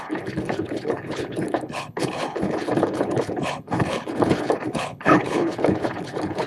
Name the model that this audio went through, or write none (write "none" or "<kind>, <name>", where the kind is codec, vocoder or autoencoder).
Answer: codec, HILCodec